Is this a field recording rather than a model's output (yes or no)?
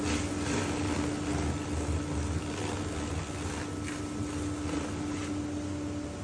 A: yes